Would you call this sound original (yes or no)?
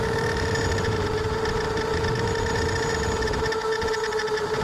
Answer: no